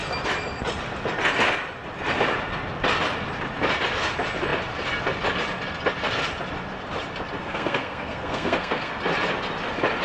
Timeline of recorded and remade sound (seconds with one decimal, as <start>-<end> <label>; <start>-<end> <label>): 0.0-7.4 recorded; 7.4-8.9 remade; 8.9-10.0 recorded